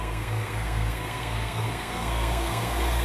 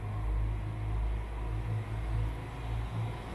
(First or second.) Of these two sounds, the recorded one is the second